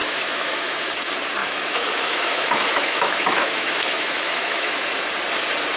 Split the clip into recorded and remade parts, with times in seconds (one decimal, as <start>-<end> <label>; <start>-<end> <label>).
0.0-0.9 remade; 0.9-1.4 recorded; 1.4-4.9 remade; 4.9-5.8 recorded